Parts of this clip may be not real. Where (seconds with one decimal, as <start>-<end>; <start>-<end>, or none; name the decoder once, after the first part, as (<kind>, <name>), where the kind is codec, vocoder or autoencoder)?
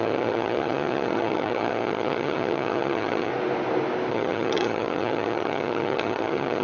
0.0-3.3 (vocoder, HiFi-GAN); 4.1-6.6